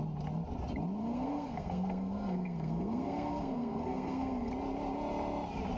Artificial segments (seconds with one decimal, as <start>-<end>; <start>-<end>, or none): 1.0-4.5